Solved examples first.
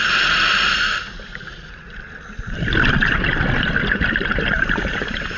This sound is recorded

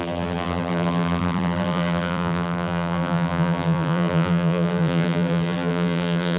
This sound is remade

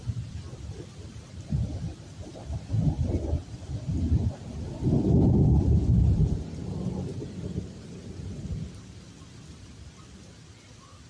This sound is remade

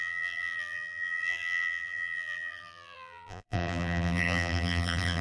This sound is remade